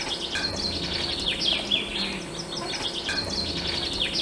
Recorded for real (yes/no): yes